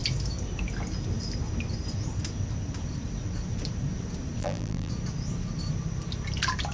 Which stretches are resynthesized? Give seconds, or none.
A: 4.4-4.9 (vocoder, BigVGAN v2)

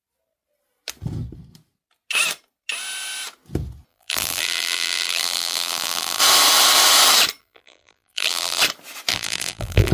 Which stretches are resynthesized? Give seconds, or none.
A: 3.9-6.2 (vocoder, BigVGAN v2); 7.4-8.6; 9.1-9.9

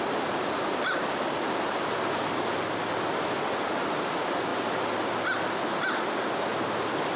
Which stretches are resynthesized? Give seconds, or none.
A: none

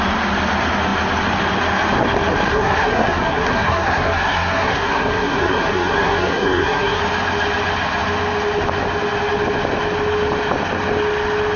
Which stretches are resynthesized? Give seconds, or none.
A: 2.5-7.0 (codec, SNAC)

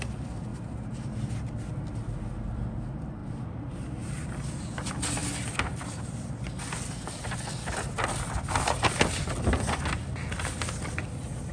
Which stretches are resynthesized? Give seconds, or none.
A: 3.2-4.5 (vocoder, BigVGAN v2)

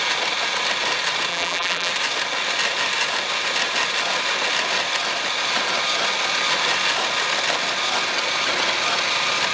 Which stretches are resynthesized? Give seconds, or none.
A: 1.3-1.9 (vocoder, BigVGAN v2)

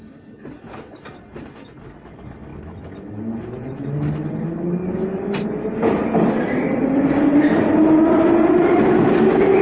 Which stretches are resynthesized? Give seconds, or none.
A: none